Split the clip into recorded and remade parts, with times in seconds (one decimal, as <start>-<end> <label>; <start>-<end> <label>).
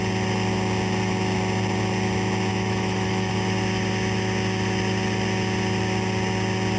0.0-2.5 recorded; 2.5-3.3 remade; 3.3-6.8 recorded